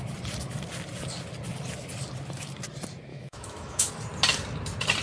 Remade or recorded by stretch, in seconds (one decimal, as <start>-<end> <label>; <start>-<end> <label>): 0.0-3.1 recorded; 3.1-3.9 remade; 3.9-5.0 recorded